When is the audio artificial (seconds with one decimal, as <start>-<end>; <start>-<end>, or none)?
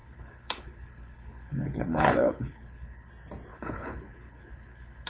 0.0-3.1; 3.5-5.1